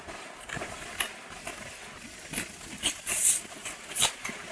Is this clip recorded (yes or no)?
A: yes